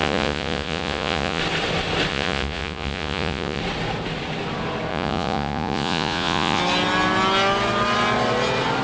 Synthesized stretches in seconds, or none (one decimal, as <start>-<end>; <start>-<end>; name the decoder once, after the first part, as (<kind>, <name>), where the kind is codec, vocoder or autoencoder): 0.0-1.4 (vocoder, Vocos); 2.1-3.6; 4.9-6.6